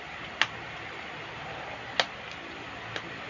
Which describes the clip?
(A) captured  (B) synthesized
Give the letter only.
A